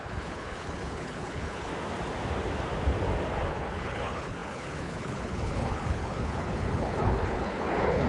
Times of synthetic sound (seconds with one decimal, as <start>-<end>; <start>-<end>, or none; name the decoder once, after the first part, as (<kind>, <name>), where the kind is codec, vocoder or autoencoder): 0.0-1.7 (codec, HILCodec); 3.5-8.1